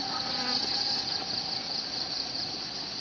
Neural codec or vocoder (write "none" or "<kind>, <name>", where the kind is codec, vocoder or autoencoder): none